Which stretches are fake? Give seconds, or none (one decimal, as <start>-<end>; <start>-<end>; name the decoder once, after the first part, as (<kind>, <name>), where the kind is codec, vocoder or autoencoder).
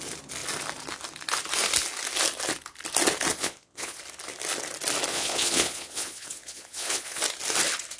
3.3-4.0 (vocoder, Vocos); 5.1-7.2